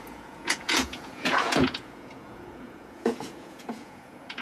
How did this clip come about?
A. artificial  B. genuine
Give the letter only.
A